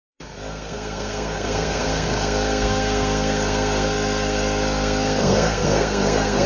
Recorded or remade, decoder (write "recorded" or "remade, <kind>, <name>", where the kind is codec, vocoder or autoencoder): remade, codec, SNAC